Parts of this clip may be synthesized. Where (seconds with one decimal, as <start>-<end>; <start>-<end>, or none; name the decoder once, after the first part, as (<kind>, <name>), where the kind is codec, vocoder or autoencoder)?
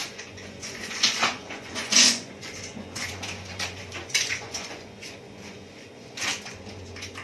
0.0-7.2 (vocoder, Vocos)